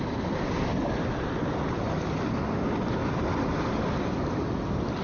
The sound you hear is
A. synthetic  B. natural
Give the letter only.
B